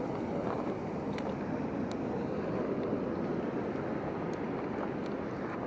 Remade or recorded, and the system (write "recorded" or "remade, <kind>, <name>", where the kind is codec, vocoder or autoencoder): recorded